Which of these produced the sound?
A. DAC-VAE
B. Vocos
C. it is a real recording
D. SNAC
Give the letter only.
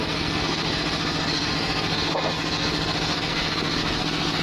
D